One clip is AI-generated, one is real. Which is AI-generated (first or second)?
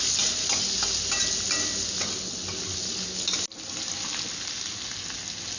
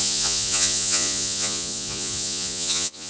second